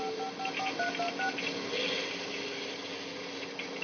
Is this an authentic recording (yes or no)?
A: yes